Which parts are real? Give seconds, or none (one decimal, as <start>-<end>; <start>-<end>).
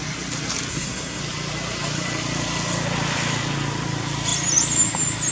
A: 0.0-0.7; 1.2-5.3